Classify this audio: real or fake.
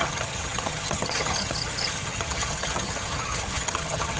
fake